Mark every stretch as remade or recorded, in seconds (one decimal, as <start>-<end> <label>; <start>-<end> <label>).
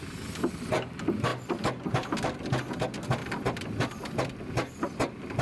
0.0-3.2 recorded; 3.2-4.4 remade; 4.4-5.4 recorded